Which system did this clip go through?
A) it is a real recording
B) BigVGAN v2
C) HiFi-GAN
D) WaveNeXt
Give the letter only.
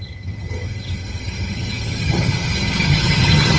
C